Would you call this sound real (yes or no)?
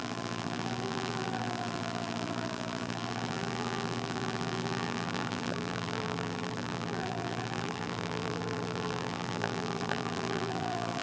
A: no